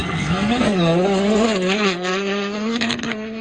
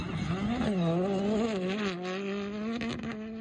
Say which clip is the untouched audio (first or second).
second